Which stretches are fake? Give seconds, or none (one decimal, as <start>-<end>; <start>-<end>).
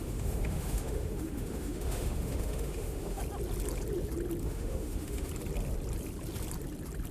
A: 0.0-3.2; 4.4-5.3